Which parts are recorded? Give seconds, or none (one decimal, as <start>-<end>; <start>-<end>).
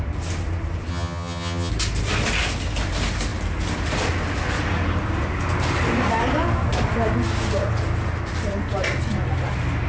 0.0-0.9; 1.7-9.9